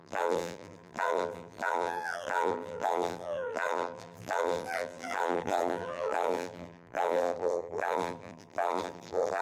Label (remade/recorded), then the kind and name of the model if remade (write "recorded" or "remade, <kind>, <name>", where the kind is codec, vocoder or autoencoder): remade, vocoder, BigVGAN v2